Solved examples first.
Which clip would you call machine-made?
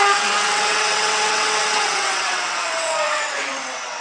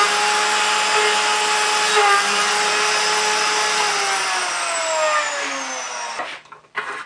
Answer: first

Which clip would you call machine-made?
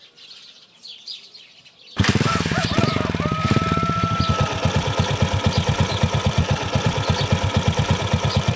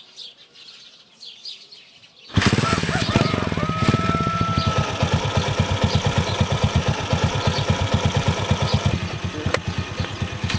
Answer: first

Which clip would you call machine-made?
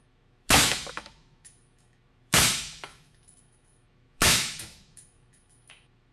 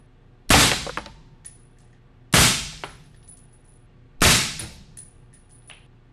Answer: first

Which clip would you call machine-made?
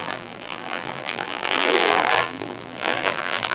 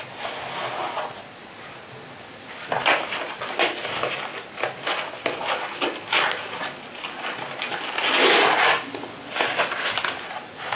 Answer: first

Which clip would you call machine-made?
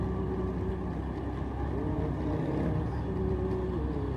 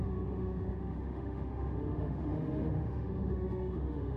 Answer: second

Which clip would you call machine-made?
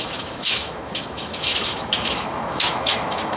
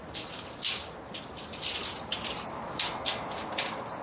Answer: first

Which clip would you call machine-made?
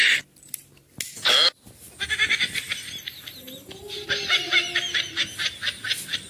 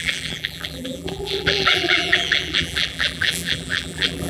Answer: second